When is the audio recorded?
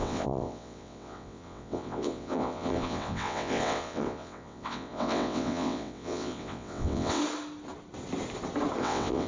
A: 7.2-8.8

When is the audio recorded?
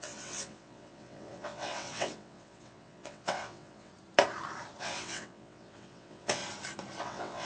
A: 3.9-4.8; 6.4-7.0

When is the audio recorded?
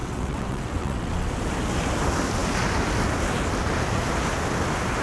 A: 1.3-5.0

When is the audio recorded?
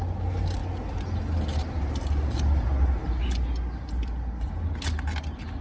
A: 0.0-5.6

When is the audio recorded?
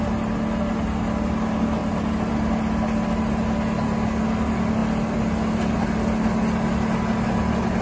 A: 0.0-7.8